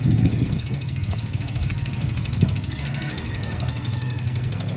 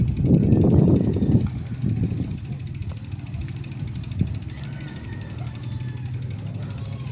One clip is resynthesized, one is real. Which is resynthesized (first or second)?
first